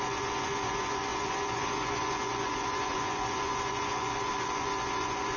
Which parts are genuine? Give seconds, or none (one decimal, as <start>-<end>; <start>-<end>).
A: none